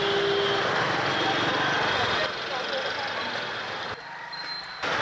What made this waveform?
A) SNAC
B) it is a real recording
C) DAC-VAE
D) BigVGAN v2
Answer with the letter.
B